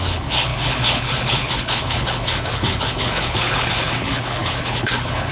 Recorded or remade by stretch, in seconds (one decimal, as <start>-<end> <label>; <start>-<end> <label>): 0.0-5.3 remade